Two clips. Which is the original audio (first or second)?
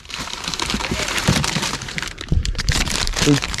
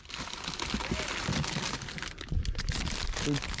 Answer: second